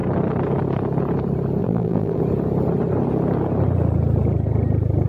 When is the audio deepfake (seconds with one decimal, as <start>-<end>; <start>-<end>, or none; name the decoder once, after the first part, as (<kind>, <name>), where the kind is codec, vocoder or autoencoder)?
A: 1.6-2.2 (vocoder, BigVGAN v2)